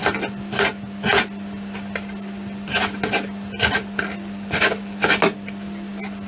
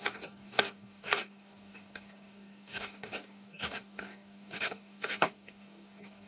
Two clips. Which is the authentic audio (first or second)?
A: first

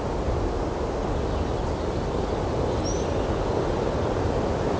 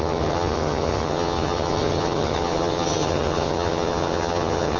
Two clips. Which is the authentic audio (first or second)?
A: first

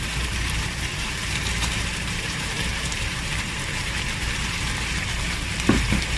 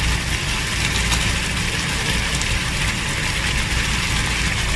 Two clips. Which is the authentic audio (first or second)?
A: second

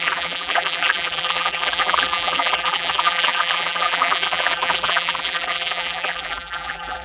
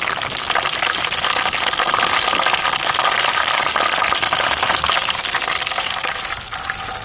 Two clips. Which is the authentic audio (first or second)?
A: second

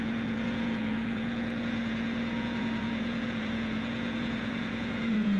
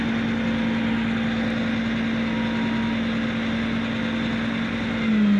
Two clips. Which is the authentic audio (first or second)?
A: second